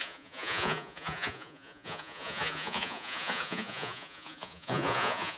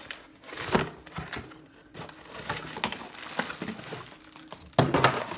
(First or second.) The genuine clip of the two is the second